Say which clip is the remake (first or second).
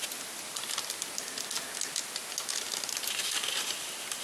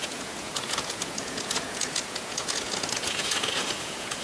second